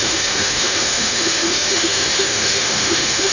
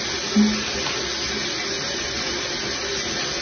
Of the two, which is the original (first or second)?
second